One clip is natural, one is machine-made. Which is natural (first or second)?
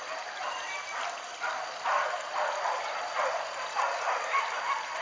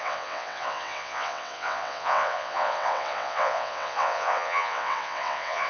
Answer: first